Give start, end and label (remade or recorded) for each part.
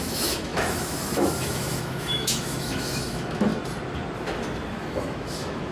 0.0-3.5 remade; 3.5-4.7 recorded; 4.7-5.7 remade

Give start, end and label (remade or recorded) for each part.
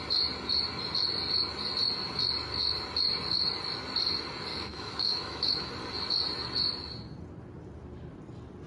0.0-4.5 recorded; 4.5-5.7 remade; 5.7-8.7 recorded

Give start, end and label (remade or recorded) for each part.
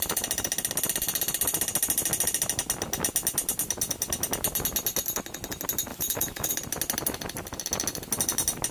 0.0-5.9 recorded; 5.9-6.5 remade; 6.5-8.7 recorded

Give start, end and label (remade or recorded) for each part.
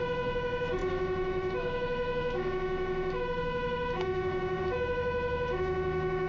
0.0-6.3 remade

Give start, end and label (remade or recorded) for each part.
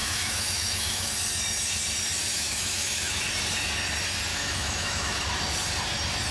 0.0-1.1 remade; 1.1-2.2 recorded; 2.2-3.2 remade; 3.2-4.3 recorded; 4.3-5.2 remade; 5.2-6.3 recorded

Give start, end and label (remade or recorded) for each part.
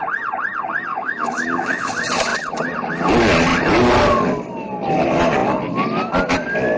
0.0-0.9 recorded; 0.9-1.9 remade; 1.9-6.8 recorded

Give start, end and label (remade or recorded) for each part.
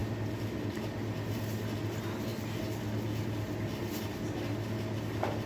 0.0-5.5 recorded